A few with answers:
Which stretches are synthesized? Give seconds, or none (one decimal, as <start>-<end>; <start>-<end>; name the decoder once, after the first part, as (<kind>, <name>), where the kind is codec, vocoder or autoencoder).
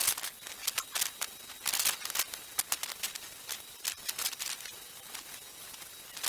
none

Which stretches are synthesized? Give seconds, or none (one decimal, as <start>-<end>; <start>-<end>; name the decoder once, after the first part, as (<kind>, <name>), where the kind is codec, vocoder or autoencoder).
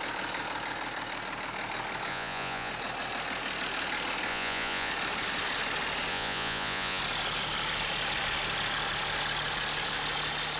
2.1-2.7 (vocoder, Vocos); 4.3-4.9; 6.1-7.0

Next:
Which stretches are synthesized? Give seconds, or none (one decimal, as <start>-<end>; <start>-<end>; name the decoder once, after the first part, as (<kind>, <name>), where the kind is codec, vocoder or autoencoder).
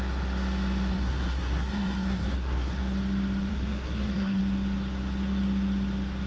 0.9-2.8 (codec, SNAC); 3.5-4.4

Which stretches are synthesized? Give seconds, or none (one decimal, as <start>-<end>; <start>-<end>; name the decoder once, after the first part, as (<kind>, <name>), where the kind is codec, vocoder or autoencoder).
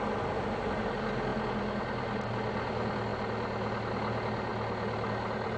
1.3-2.3 (vocoder, BigVGAN v2); 4.5-5.6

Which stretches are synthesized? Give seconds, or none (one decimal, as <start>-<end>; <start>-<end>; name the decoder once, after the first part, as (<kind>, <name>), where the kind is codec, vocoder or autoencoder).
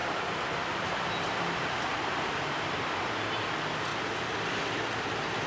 0.0-3.3 (vocoder, BigVGAN v2)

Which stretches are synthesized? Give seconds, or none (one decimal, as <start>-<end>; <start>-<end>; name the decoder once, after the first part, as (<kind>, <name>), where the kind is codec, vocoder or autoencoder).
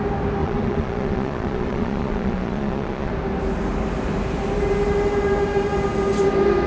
0.4-3.1 (vocoder, Vocos)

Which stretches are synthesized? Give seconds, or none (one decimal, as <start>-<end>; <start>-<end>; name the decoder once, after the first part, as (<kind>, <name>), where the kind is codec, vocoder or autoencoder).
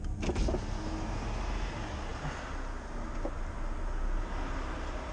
none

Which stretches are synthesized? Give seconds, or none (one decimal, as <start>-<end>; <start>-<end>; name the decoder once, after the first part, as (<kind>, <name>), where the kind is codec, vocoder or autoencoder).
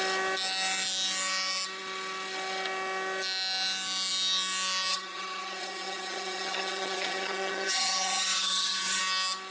4.9-9.0 (vocoder, HiFi-GAN)